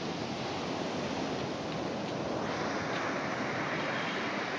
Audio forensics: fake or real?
real